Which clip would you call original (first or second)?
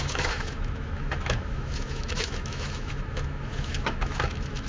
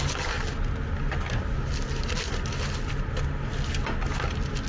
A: second